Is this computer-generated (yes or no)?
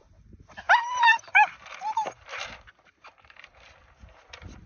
yes